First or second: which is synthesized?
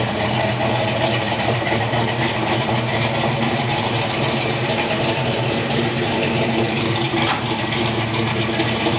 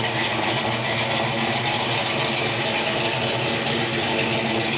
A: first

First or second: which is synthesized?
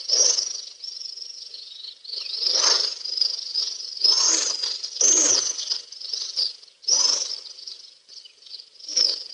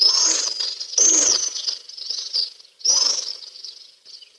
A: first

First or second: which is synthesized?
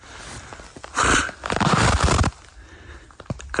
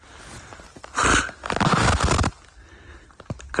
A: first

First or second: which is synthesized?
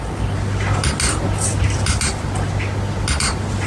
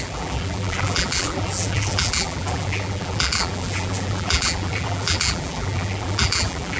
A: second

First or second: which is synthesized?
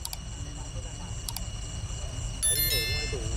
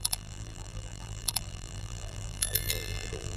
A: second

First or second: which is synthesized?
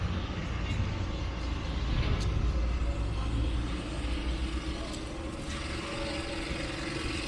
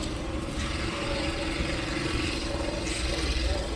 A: second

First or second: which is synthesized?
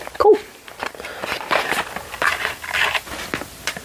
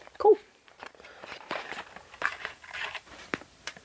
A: second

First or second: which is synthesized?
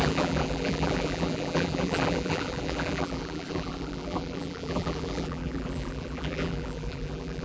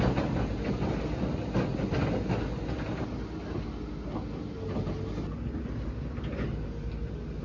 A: first